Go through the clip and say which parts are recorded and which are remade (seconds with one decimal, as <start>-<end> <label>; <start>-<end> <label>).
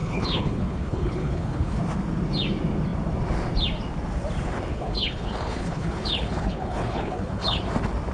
0.0-1.8 remade; 1.8-4.7 recorded; 4.7-7.6 remade; 7.6-8.1 recorded